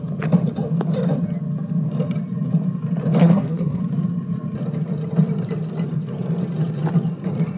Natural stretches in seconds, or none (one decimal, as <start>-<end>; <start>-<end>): 0.0-3.2; 3.8-7.6